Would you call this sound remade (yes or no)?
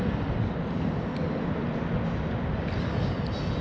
no